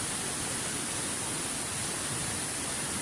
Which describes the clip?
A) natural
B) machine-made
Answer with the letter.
B